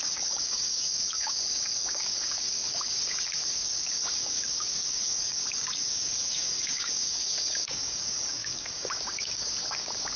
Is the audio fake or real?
fake